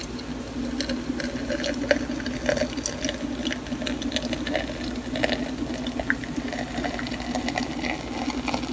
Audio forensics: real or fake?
real